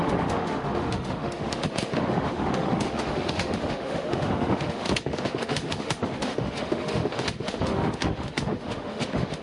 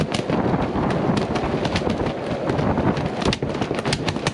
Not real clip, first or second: first